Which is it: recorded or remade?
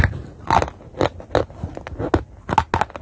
recorded